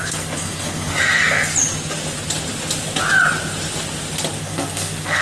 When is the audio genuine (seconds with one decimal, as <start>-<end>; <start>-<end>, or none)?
1.5-4.4